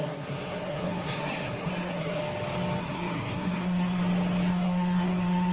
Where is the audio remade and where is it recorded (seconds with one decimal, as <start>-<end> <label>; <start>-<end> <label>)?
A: 0.0-2.2 remade; 2.2-2.8 recorded; 2.8-4.0 remade; 4.0-4.5 recorded; 4.5-5.5 remade